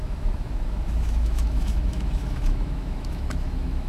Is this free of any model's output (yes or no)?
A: no